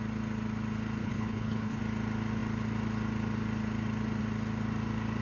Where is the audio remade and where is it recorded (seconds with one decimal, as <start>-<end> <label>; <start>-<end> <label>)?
0.0-1.0 recorded; 1.0-1.8 remade; 1.8-5.2 recorded